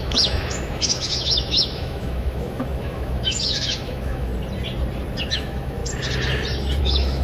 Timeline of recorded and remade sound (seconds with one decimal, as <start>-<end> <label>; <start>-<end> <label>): 0.0-4.3 remade; 4.3-5.2 recorded; 5.2-5.8 remade; 5.8-6.8 recorded; 6.8-7.2 remade